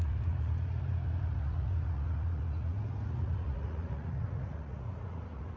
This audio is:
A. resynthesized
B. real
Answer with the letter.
A